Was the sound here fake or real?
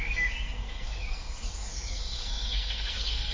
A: fake